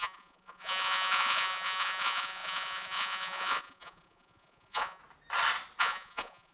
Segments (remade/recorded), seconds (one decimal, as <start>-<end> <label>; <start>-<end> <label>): 0.0-5.0 remade; 5.0-5.8 recorded; 5.8-6.5 remade

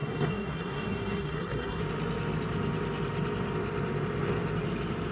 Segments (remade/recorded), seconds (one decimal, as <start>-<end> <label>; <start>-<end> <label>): 0.0-1.8 remade; 1.8-5.1 recorded

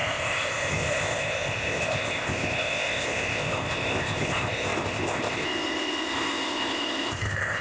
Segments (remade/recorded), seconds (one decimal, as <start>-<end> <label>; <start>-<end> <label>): 0.0-7.6 remade

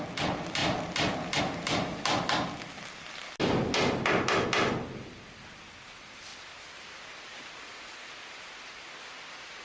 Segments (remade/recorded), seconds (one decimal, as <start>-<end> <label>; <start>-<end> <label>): 0.0-9.6 recorded

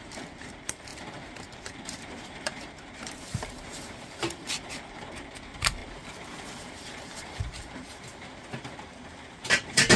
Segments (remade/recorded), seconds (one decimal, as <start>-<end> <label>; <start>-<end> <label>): 0.0-5.8 remade; 5.8-6.7 recorded; 6.7-8.1 remade; 8.1-10.0 recorded

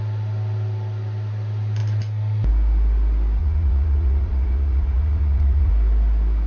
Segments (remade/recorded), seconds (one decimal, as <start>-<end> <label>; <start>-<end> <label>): 0.0-3.4 recorded; 3.4-5.7 remade; 5.7-6.5 recorded